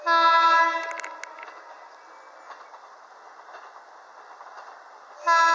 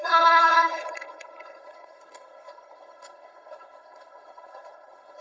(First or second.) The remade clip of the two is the second